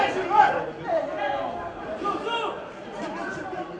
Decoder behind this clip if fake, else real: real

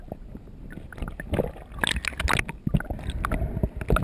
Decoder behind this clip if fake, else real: real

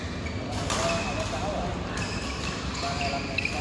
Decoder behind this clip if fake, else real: real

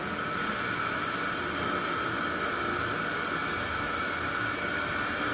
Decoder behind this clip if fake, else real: real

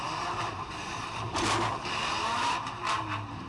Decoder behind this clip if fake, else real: fake, vocoder, BigVGAN v2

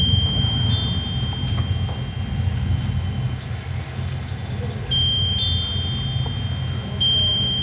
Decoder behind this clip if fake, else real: real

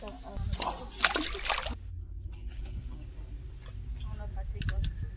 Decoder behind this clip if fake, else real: real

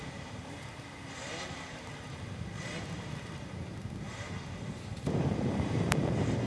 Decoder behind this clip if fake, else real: fake, vocoder, BigVGAN v2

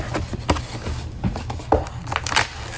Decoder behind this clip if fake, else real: real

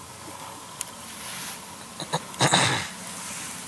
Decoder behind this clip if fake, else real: real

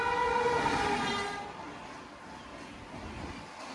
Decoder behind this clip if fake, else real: real